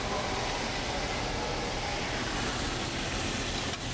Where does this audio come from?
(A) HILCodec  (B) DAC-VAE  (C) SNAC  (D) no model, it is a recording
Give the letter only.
D